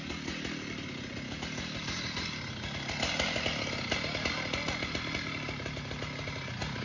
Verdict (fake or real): real